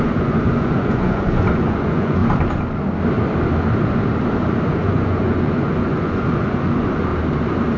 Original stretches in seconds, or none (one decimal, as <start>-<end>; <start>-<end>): 2.2-4.6; 7.1-7.8